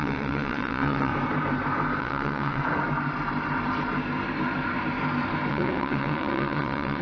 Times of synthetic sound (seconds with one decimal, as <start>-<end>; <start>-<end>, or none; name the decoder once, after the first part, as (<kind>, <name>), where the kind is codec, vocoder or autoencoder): 0.0-1.1 (vocoder, WaveNeXt); 2.0-2.6; 5.5-7.0